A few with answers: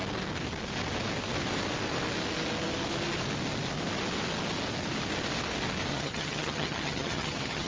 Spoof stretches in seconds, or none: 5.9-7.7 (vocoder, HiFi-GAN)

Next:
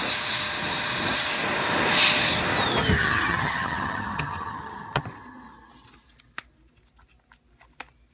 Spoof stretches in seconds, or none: 3.0-5.0 (vocoder, HiFi-GAN)